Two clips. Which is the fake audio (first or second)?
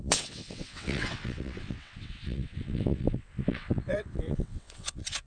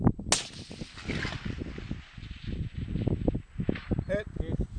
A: first